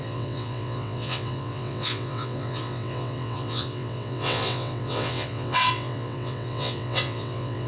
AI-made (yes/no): yes